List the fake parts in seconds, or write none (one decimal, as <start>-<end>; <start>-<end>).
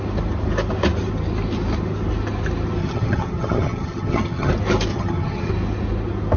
2.8-4.5; 4.9-5.5